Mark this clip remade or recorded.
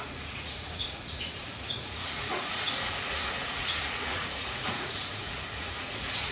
remade